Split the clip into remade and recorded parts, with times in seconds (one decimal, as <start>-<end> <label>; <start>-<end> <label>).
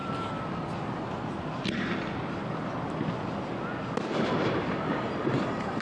0.0-4.1 recorded; 4.1-5.8 remade